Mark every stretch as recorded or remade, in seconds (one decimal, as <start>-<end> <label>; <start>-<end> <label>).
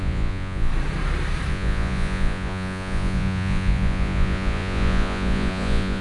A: 0.0-0.7 remade; 0.7-1.5 recorded; 1.5-6.0 remade